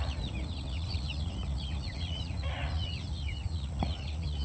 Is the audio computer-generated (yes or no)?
yes